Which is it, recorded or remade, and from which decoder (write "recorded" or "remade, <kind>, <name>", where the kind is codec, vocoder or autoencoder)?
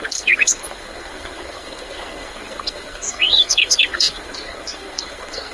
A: remade, codec, SNAC